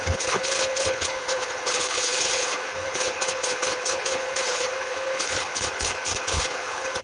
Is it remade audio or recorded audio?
remade